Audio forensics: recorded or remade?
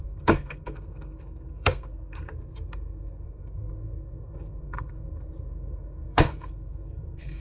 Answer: remade